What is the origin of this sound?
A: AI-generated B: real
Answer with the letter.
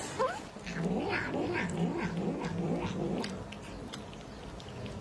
B